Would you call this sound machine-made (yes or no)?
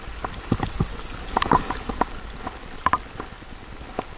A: no